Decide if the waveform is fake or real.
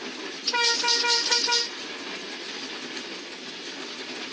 real